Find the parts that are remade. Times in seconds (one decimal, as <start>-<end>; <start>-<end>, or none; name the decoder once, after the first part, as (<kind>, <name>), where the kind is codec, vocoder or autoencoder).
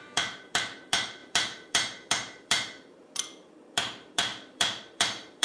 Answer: 0.0-5.4 (vocoder, BigVGAN v2)